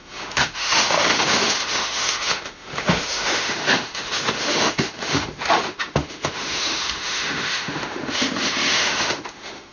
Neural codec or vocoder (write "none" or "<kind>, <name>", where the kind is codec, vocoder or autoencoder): autoencoder, DAC-VAE